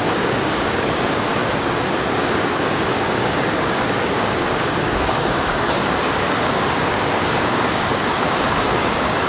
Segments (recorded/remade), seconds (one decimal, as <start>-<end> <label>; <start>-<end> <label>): 0.0-9.3 remade